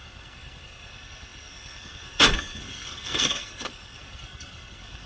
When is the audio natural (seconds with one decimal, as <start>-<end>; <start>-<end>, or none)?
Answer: none